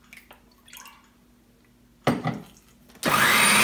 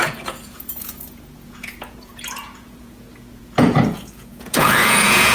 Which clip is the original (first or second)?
first